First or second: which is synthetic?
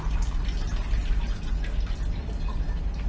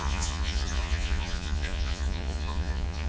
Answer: second